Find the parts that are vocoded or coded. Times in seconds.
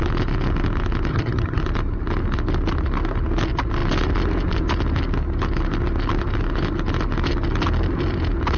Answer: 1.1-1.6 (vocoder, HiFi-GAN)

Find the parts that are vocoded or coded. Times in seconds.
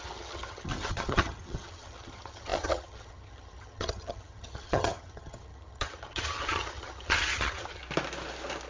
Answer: 0.0-7.8 (vocoder, HiFi-GAN)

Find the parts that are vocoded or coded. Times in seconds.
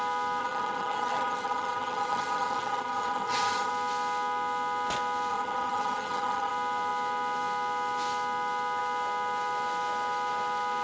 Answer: 0.4-3.7 (vocoder, HiFi-GAN); 5.3-6.5